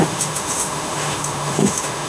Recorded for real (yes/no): no